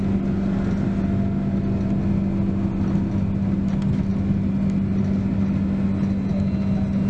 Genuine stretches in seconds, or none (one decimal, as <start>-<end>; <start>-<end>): 0.0-7.1